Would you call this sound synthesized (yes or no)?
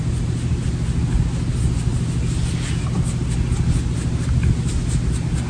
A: no